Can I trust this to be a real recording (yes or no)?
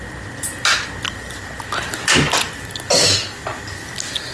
yes